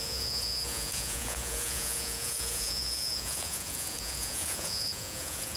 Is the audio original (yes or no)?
no